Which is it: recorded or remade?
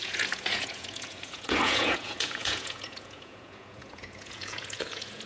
remade